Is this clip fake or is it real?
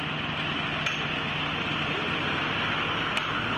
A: real